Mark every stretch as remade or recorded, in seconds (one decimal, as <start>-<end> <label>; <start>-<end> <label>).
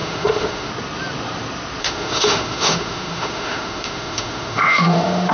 0.0-0.7 remade; 0.7-1.8 recorded; 1.8-5.3 remade